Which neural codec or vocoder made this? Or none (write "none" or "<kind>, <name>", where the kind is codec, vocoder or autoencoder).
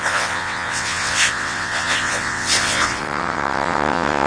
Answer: vocoder, WaveNeXt